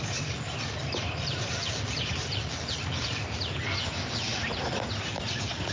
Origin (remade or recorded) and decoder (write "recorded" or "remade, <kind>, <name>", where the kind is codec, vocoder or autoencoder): recorded